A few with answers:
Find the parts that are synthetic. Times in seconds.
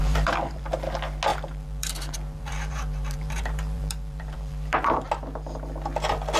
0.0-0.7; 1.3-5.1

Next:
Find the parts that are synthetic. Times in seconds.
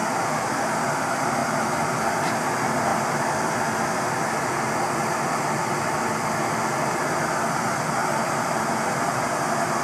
0.7-1.4; 2.1-2.9; 7.6-9.8